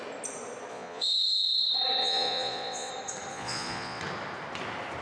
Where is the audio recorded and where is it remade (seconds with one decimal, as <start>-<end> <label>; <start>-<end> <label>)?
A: 0.0-0.7 recorded; 0.7-1.6 remade; 1.6-2.0 recorded; 2.0-2.9 remade; 2.9-3.3 recorded; 3.3-4.0 remade; 4.0-5.0 recorded